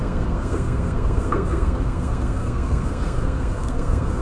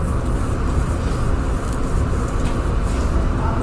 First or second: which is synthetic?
first